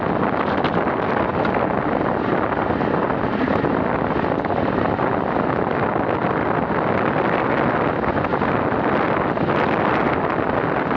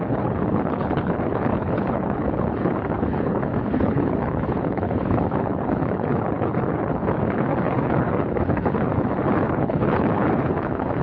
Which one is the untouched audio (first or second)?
first